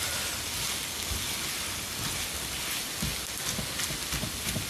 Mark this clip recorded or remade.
recorded